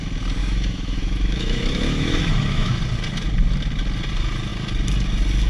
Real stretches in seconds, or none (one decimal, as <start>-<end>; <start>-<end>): 0.0-0.4; 2.8-5.5